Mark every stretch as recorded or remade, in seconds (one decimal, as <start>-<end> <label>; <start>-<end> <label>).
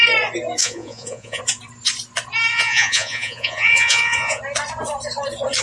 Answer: 0.0-0.6 recorded; 0.6-1.4 remade; 1.4-2.5 recorded; 2.5-4.4 remade; 4.4-5.6 recorded